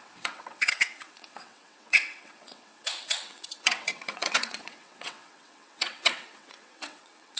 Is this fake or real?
fake